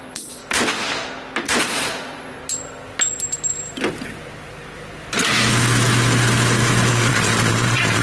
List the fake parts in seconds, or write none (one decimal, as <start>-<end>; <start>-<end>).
0.0-0.4; 1.6-2.4; 6.9-8.0